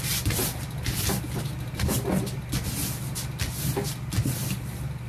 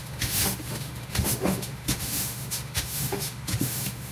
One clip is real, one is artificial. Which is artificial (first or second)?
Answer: second